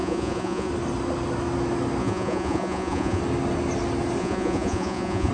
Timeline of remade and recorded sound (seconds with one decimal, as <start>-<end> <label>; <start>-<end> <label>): 0.0-0.7 remade; 0.7-2.0 recorded; 2.0-3.2 remade; 3.2-4.2 recorded; 4.2-5.3 remade